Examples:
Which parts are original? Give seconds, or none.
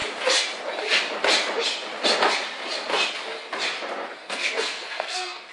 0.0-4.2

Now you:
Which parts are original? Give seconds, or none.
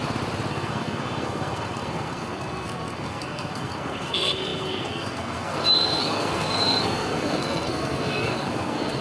0.0-0.5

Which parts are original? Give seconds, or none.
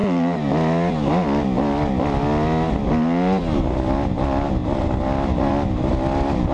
0.0-6.5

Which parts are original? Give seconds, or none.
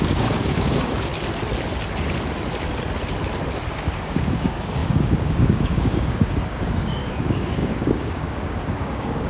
1.1-3.7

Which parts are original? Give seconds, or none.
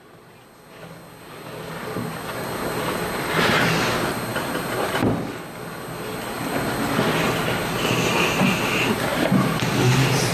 0.0-10.3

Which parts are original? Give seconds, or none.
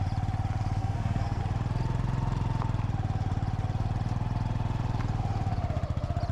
0.0-0.8; 1.4-6.3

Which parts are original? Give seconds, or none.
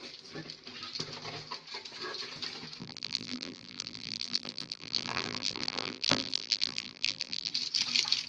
0.0-2.8; 7.5-8.3